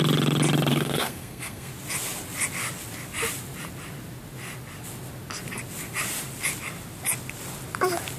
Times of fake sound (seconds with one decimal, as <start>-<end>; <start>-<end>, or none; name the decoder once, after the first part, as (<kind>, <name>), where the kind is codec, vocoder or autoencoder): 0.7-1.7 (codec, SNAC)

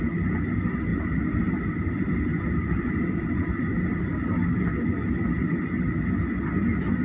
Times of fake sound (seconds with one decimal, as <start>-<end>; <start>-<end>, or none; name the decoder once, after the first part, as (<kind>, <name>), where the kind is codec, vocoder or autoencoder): 0.9-4.6 (vocoder, BigVGAN v2)

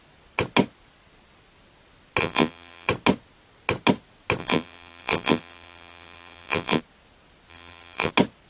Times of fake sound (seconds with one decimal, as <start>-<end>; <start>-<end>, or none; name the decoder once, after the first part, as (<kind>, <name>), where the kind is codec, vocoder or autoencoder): 2.2-2.9 (vocoder, BigVGAN v2); 4.4-6.8; 7.5-8.1

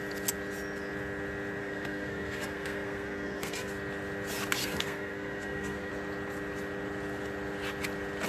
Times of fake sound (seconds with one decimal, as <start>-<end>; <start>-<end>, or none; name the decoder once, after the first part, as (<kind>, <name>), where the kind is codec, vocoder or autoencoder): 1.6-3.7 (codec, SNAC); 4.6-5.9

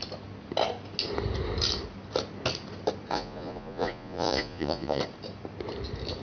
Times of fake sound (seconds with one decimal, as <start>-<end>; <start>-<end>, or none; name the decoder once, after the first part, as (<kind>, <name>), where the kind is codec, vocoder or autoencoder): 3.1-5.0 (vocoder, Vocos)